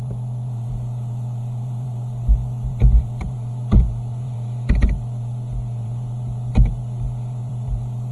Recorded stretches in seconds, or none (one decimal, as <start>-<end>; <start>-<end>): none

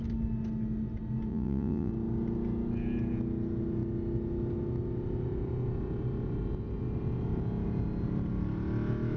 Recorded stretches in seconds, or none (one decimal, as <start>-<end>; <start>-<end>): 0.0-1.3; 1.9-9.2

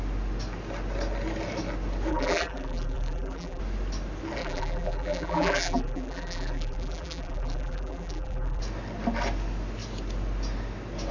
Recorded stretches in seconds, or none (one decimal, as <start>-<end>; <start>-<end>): 0.0-2.1; 3.6-4.4; 8.6-11.1

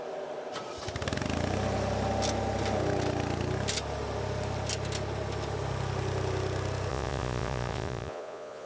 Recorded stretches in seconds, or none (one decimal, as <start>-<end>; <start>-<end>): 0.0-6.9

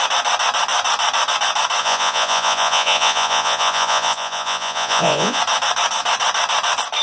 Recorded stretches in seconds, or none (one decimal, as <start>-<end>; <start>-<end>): 0.0-1.8; 5.4-7.0

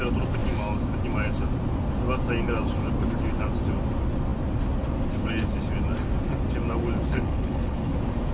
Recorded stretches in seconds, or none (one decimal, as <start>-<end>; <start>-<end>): 0.0-7.1; 7.9-8.3

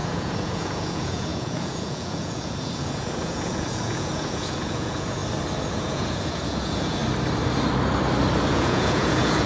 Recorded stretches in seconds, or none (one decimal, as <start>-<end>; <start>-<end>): 5.2-5.7; 7.0-8.5

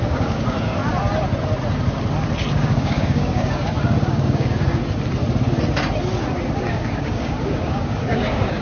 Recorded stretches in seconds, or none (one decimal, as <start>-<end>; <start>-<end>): 0.8-2.5; 4.8-6.7